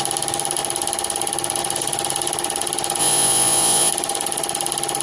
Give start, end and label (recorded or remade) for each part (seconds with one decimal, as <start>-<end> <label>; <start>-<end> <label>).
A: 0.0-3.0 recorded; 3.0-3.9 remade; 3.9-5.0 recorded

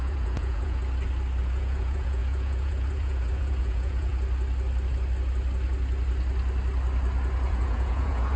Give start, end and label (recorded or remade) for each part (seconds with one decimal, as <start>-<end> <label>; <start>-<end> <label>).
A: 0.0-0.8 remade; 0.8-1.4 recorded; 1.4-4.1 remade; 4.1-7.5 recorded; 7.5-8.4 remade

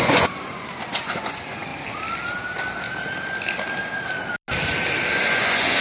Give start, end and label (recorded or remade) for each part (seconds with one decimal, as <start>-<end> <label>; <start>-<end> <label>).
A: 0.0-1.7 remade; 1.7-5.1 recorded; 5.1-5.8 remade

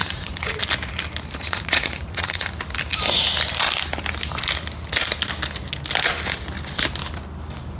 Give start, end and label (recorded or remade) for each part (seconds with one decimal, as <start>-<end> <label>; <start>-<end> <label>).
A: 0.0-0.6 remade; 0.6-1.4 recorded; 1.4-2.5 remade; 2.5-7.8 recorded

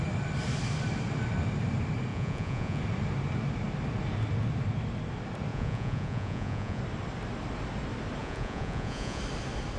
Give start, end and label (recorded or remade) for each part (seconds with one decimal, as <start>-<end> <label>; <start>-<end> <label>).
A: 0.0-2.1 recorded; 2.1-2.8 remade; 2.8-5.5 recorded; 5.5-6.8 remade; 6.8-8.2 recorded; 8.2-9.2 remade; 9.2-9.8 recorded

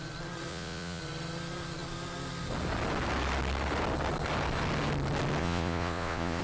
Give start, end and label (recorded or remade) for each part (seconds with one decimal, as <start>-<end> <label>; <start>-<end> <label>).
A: 0.0-0.5 recorded; 0.5-1.0 remade; 1.0-5.4 recorded; 5.4-6.4 remade

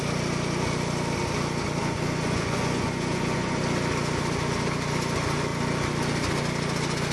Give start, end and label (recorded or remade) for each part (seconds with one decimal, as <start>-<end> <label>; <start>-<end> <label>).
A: 0.0-1.8 recorded; 1.8-3.6 remade; 3.6-7.1 recorded